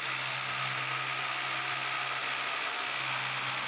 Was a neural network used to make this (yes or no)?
no